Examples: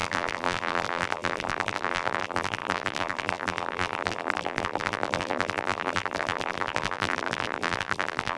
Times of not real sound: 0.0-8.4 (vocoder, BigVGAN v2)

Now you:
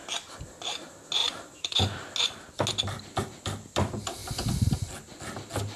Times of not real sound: 1.2-2.1 (vocoder, BigVGAN v2)

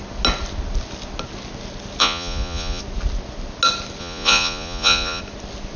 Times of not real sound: 2.0-2.8 (vocoder, Vocos); 4.0-5.2

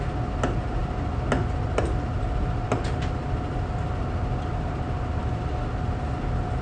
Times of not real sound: none

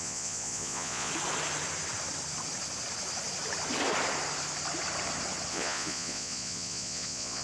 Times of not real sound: 0.0-1.1 (vocoder, Vocos); 5.5-7.4

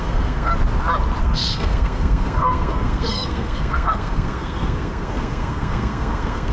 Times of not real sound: 0.0-0.5 (codec, SNAC); 1.2-6.5

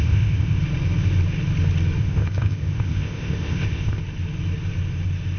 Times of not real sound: 0.0-0.6 (codec, ZipCodec); 2.0-4.0

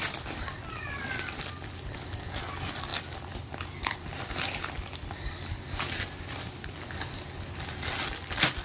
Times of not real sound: none